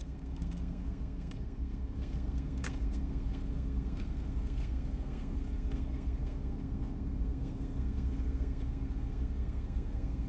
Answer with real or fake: fake